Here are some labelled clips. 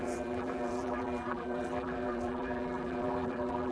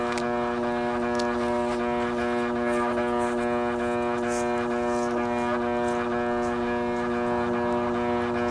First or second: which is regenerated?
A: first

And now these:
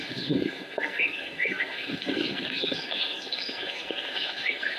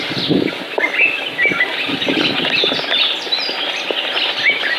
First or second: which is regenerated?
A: first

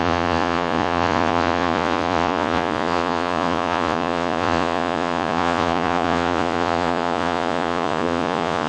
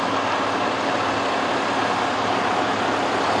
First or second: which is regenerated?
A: first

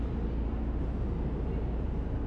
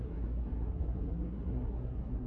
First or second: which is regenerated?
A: second